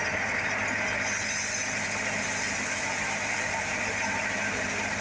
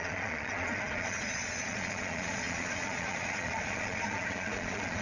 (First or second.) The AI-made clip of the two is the second